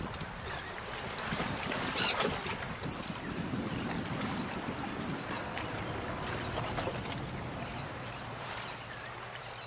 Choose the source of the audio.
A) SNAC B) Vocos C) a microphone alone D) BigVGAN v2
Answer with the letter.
D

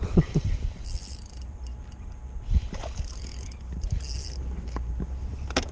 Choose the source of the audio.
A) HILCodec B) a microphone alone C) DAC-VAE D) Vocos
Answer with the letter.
B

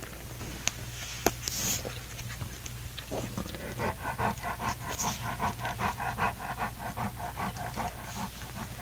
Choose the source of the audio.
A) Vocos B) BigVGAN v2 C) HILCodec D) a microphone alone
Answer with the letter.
D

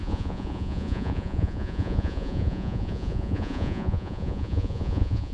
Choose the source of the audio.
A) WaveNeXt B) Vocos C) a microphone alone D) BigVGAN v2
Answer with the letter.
B